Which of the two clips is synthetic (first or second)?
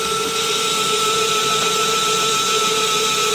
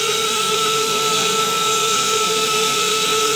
second